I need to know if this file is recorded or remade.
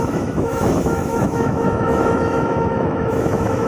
remade